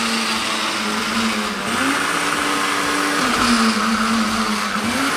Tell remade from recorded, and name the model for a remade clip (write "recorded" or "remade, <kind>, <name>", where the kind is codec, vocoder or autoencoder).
recorded